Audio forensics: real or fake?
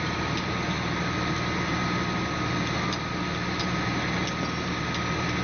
real